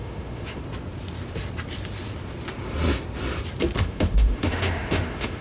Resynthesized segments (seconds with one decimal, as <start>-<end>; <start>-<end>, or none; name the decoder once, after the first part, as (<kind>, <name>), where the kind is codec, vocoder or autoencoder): 0.0-0.6 (autoencoder, DAC-VAE); 3.8-5.4

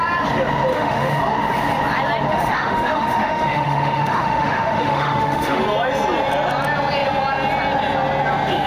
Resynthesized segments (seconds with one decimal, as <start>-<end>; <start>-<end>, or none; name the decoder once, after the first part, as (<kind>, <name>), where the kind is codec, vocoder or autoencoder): 0.7-1.2 (autoencoder, DAC-VAE); 2.3-5.6

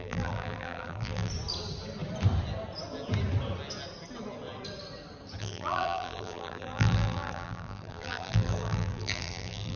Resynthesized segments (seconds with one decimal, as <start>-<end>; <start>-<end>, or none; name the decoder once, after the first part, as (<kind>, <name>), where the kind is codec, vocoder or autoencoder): 0.0-1.3 (vocoder, BigVGAN v2); 5.4-9.8

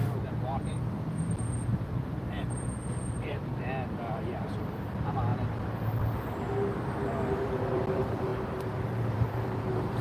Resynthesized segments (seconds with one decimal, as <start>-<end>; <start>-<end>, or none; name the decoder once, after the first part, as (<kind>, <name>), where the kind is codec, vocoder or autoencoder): 0.0-5.3 (vocoder, BigVGAN v2); 7.4-10.0

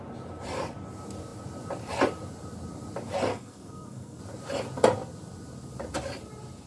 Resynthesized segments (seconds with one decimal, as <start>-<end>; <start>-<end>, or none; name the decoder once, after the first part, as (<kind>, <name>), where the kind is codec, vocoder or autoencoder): 3.3-4.2 (codec, SNAC)

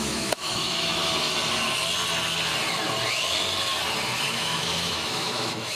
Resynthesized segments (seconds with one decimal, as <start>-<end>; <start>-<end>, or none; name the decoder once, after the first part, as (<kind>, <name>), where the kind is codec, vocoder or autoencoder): 0.0-1.0 (autoencoder, DAC-VAE); 4.2-5.7

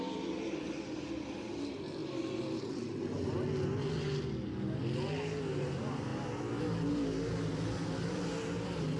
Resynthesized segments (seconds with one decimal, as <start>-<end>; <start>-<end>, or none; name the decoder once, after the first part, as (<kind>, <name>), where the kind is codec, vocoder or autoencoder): none

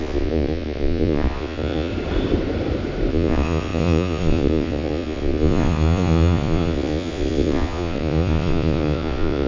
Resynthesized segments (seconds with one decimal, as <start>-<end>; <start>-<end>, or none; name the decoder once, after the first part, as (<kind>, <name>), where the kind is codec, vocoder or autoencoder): 0.0-1.9 (vocoder, Vocos); 3.1-9.5